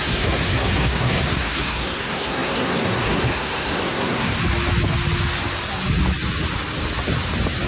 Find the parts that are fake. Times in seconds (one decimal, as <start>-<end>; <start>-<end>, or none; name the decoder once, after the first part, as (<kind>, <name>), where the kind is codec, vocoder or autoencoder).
0.0-4.4 (codec, SNAC)

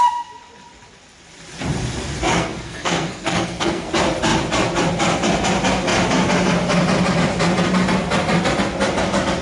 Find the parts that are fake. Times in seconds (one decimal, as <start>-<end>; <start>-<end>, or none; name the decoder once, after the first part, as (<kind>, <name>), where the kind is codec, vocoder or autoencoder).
2.3-3.9 (codec, SNAC)